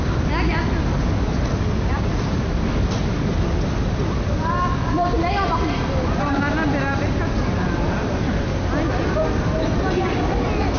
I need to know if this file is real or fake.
real